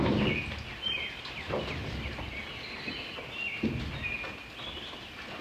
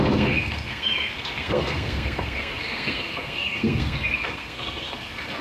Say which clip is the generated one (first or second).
second